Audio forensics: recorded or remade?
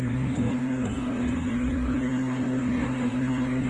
remade